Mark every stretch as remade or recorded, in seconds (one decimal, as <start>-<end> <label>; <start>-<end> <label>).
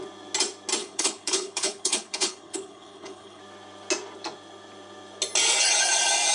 0.0-0.8 recorded; 0.8-3.4 remade; 3.4-6.3 recorded